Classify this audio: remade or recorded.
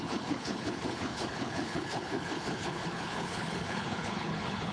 remade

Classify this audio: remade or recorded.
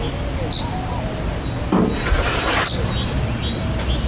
recorded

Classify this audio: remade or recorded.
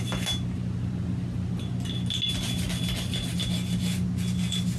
recorded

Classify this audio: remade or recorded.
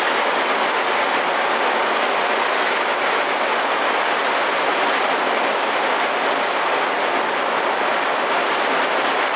recorded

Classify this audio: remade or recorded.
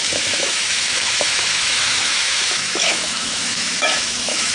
remade